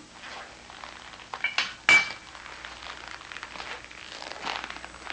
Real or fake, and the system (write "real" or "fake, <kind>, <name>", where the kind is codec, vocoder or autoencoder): real